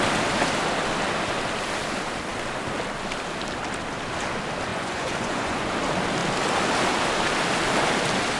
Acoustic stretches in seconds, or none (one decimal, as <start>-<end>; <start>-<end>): 0.0-4.7; 5.7-8.4